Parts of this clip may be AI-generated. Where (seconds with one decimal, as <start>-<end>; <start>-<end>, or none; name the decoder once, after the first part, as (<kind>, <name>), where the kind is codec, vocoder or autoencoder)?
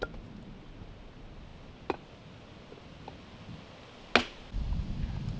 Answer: none